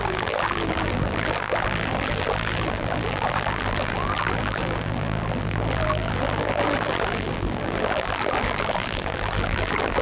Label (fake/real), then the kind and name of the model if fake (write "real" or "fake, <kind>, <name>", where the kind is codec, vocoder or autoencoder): fake, vocoder, BigVGAN v2